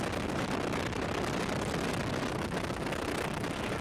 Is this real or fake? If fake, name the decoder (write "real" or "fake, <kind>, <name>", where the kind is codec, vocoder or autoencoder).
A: real